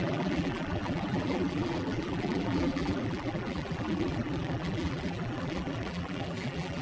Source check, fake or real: fake